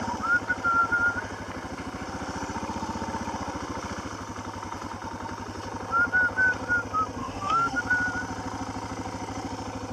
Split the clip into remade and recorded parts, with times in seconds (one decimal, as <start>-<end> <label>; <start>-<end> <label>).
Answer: 0.0-7.2 recorded; 7.2-7.8 remade; 7.8-9.9 recorded